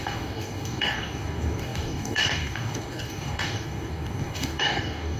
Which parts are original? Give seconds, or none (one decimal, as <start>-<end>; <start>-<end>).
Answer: none